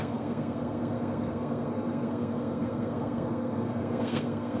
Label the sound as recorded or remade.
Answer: remade